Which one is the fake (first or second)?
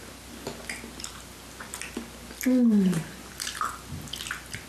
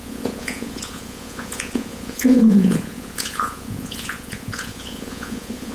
second